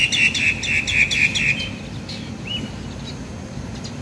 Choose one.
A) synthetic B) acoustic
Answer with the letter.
B